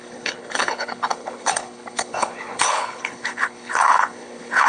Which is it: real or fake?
fake